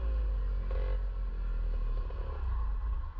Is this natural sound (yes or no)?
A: yes